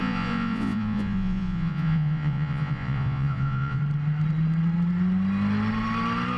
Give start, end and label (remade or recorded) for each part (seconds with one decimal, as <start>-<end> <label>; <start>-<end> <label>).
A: 0.0-3.8 remade; 3.8-6.4 recorded